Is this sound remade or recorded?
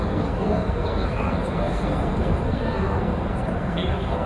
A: remade